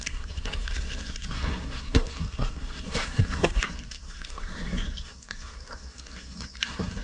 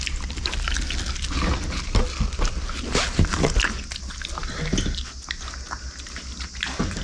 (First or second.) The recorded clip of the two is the second